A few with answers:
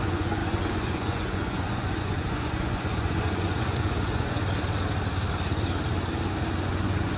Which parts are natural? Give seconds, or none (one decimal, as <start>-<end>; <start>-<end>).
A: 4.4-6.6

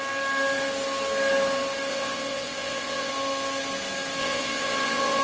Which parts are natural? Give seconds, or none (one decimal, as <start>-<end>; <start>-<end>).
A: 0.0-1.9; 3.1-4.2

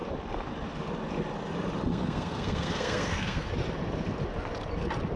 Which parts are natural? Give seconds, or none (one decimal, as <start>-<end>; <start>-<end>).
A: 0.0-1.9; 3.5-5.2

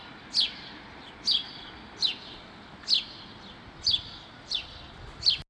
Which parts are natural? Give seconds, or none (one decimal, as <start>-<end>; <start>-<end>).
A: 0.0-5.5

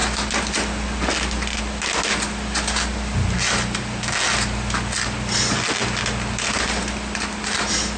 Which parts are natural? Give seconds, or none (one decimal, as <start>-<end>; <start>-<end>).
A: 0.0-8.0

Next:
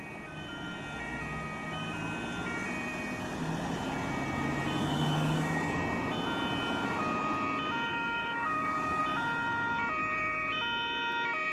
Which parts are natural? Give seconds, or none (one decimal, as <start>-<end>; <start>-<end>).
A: 0.0-4.8; 5.7-7.9; 9.0-10.0; 10.5-11.5

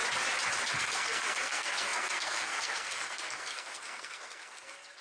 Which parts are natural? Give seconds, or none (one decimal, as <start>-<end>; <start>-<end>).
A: 0.0-0.7

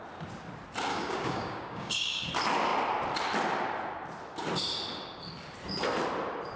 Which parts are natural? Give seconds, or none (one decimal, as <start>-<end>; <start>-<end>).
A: 0.0-0.9; 2.3-6.6